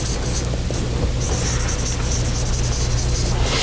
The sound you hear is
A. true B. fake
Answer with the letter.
A